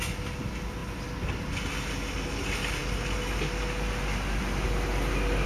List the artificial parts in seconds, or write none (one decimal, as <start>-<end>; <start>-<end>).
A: none